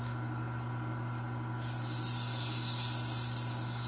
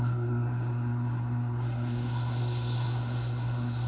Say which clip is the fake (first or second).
second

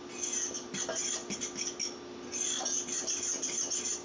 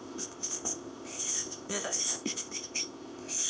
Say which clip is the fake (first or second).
second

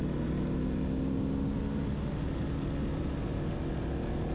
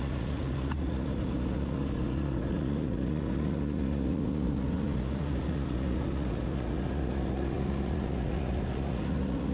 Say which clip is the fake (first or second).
second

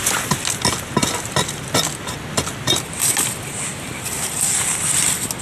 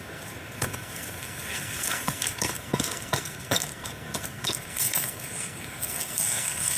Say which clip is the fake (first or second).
second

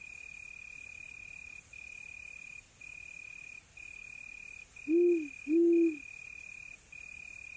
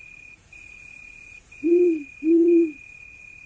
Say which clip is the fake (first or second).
second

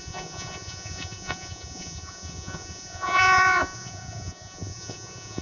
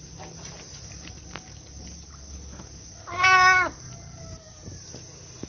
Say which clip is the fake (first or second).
first